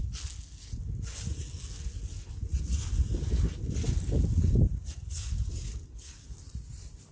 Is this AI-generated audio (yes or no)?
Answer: no